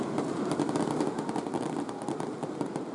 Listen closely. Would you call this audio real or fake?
real